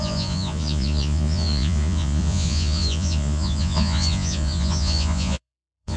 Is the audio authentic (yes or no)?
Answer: no